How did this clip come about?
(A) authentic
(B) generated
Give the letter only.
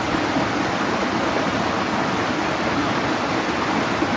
A